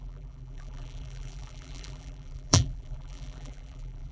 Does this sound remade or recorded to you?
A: remade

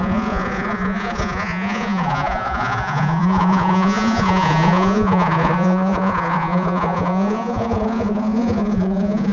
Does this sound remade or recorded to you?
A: remade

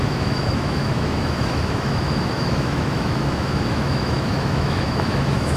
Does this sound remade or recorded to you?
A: remade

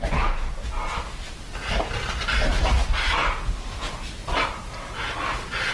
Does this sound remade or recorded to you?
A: recorded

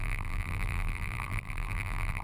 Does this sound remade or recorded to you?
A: remade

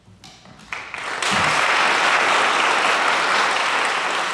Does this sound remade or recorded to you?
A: recorded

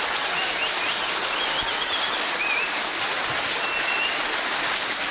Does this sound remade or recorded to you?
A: recorded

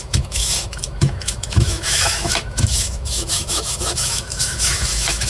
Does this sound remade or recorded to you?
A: remade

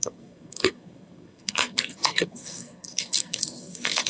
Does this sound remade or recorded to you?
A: remade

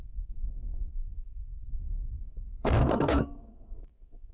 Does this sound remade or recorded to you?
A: remade